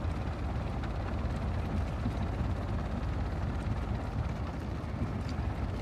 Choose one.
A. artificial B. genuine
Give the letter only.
B